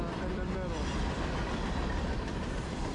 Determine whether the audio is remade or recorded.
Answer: remade